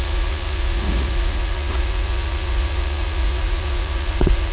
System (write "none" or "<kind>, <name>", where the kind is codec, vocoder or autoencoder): vocoder, Vocos